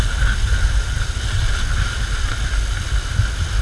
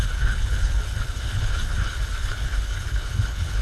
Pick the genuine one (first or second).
first